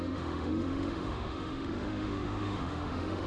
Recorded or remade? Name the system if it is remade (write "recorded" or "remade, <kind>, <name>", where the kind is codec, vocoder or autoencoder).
remade, autoencoder, DAC-VAE